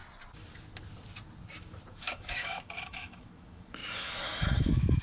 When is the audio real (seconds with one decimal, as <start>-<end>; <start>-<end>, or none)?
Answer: 0.0-1.9